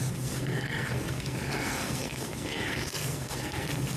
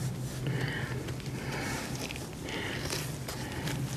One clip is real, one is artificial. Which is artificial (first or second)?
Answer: first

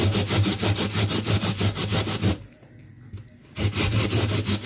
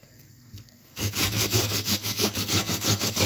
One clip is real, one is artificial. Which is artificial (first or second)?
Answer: second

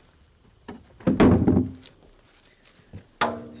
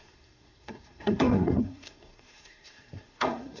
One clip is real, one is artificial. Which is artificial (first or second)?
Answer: second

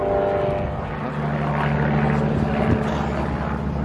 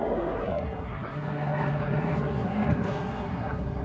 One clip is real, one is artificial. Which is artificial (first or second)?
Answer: second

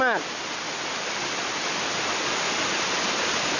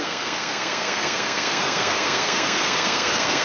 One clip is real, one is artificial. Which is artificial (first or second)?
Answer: second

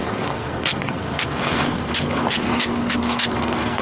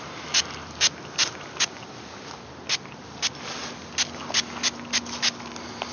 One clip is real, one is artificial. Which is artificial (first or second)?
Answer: first